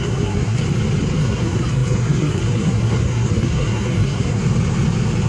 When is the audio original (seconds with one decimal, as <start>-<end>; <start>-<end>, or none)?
0.6-1.2; 4.4-5.3